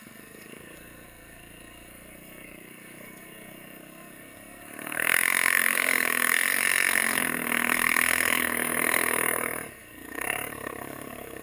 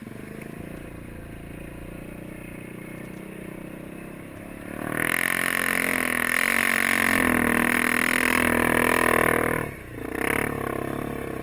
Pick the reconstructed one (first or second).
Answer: first